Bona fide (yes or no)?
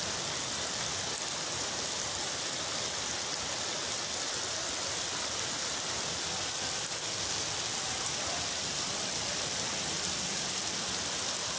yes